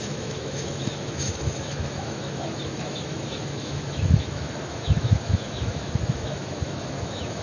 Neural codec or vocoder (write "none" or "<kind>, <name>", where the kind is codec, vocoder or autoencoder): autoencoder, DAC-VAE